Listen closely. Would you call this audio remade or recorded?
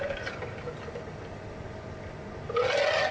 recorded